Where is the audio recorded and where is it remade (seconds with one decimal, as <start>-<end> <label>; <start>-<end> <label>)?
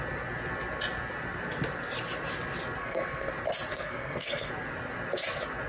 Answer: 0.0-2.8 recorded; 2.8-3.3 remade; 3.3-3.7 recorded; 3.7-4.5 remade; 4.5-5.7 recorded